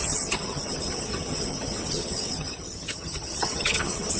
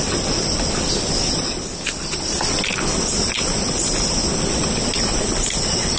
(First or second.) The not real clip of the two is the first